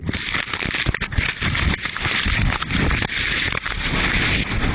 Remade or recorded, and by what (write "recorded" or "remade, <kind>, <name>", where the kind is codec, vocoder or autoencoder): recorded